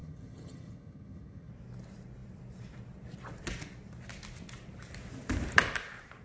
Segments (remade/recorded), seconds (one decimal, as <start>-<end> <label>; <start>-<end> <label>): 0.0-1.5 remade; 1.5-6.2 recorded